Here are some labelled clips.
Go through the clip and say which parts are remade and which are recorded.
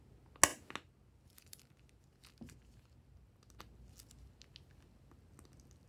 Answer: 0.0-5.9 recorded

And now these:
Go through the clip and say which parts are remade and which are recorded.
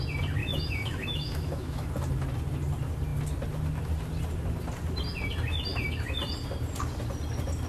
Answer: 0.0-0.4 recorded; 0.4-1.9 remade; 1.9-7.7 recorded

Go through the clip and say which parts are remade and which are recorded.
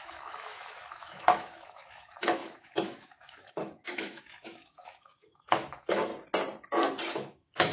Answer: 0.0-6.1 remade; 6.1-7.1 recorded; 7.1-7.7 remade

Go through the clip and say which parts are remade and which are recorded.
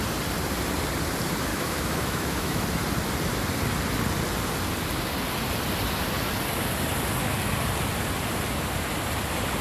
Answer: 0.0-1.5 recorded; 1.5-2.6 remade; 2.6-9.6 recorded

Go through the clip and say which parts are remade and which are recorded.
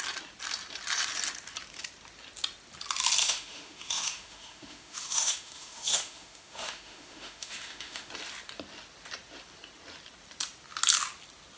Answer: 0.0-3.2 recorded; 3.2-8.1 remade; 8.1-11.6 recorded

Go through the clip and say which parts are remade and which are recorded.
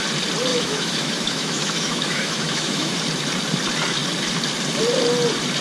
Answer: 0.0-0.5 recorded; 0.5-2.9 remade; 2.9-5.6 recorded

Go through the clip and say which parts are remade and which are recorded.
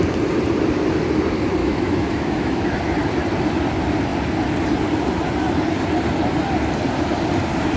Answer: 0.0-1.6 recorded; 1.6-2.7 remade; 2.7-7.8 recorded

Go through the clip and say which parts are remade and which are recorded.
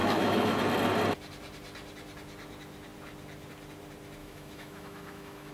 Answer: 0.0-0.6 remade; 0.6-4.2 recorded; 4.2-5.5 remade